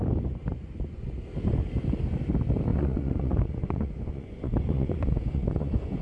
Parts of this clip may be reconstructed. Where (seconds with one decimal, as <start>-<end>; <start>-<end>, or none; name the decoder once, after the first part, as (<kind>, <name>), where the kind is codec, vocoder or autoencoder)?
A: 0.4-1.1 (vocoder, Vocos); 2.7-6.0